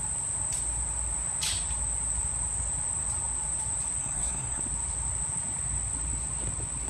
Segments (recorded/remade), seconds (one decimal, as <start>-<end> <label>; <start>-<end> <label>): 0.0-4.0 recorded; 4.0-4.6 remade; 4.6-6.9 recorded